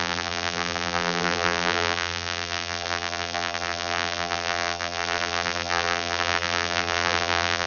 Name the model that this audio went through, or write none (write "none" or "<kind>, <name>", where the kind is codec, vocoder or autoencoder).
vocoder, BigVGAN v2